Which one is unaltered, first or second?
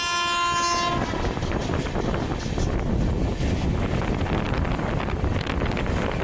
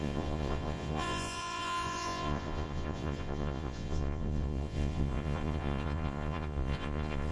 first